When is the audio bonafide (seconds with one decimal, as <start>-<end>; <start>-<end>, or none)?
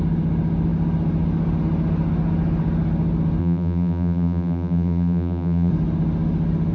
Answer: 0.0-3.4; 5.7-6.7